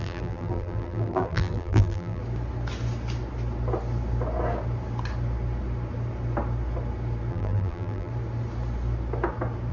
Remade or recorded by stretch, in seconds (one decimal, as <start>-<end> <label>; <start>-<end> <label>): 0.0-2.2 remade; 2.2-7.3 recorded; 7.3-8.1 remade; 8.1-9.7 recorded